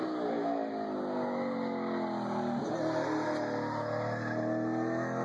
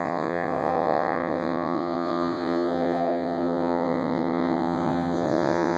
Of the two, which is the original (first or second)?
first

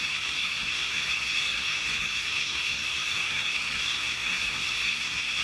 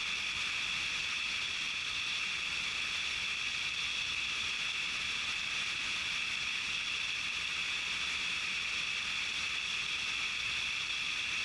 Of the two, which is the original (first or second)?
second